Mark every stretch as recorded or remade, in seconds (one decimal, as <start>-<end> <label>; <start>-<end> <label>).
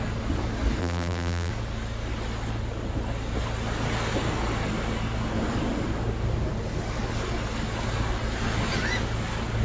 0.0-0.8 recorded; 0.8-1.5 remade; 1.5-9.6 recorded